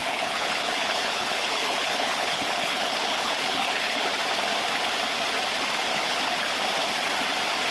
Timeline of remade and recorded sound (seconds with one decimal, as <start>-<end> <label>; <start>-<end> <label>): 0.0-4.1 remade; 4.1-5.9 recorded; 5.9-6.6 remade; 6.6-7.7 recorded